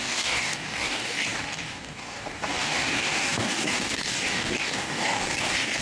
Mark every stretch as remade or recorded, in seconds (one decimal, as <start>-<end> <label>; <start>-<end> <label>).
0.0-5.8 remade